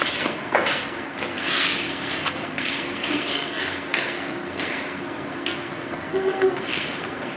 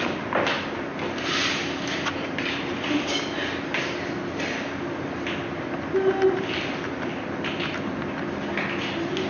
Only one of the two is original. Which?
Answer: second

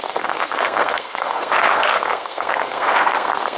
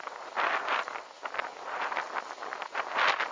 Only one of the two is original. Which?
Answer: second